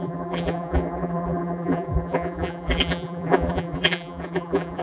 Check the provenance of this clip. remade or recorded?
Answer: remade